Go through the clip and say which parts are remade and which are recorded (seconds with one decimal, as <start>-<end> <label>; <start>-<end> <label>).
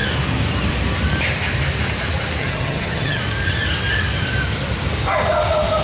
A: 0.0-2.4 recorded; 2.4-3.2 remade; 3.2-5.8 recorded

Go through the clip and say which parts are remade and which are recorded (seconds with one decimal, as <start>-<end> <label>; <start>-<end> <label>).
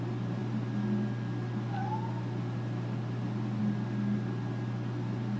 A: 0.0-5.4 recorded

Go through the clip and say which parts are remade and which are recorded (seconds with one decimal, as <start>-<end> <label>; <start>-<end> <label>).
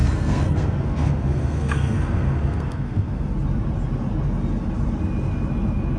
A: 0.0-3.3 remade; 3.3-6.0 recorded